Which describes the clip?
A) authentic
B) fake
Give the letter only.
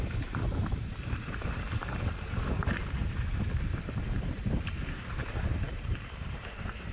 B